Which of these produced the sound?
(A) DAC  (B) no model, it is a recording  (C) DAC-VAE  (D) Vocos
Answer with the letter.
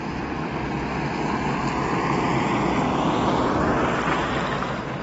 B